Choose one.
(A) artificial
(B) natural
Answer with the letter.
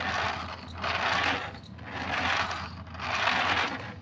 B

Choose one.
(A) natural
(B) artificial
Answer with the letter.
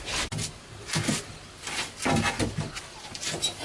A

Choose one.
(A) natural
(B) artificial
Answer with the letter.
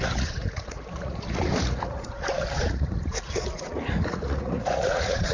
B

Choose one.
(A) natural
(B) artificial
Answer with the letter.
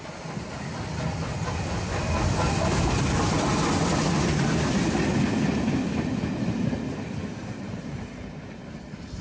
A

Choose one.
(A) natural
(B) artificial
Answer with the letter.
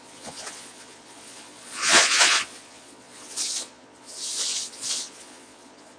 B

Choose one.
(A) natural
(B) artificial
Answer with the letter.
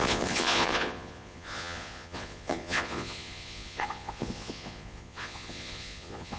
B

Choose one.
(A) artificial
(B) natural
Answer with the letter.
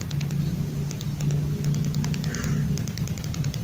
B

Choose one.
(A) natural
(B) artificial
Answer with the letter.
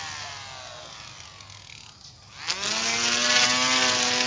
A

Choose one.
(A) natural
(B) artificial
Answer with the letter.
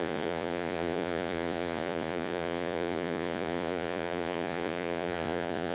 B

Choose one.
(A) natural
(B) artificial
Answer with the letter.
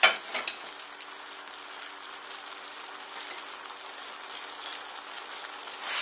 A